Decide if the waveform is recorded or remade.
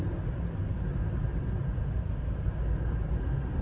recorded